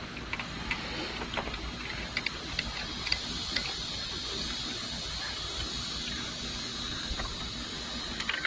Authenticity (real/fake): real